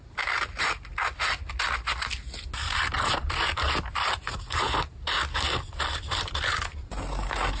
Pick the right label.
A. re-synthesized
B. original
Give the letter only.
B